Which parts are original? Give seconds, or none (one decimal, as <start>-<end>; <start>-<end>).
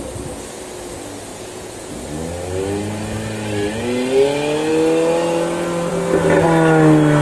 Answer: 0.0-1.3; 1.9-7.2